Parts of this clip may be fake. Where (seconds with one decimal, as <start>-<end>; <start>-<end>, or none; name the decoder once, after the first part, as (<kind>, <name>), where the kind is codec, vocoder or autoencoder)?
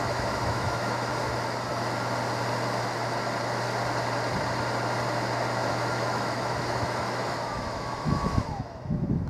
0.0-1.1 (autoencoder, DAC-VAE); 5.7-9.3